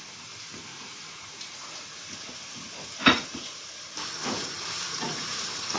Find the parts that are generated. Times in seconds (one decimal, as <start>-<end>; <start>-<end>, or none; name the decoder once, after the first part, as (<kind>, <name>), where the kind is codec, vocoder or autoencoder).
0.7-3.7 (vocoder, Vocos); 4.2-5.8